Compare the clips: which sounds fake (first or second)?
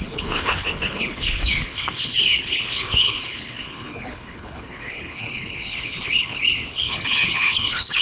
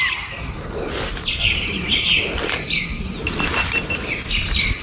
first